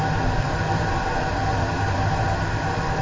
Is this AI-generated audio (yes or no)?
yes